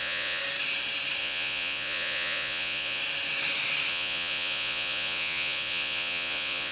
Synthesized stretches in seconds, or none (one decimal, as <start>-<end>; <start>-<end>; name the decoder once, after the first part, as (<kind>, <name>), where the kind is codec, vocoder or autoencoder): 0.0-0.4 (vocoder, Vocos); 1.2-3.0; 3.9-6.7